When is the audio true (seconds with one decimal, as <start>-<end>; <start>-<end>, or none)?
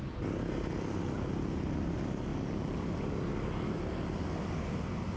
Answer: 0.0-5.2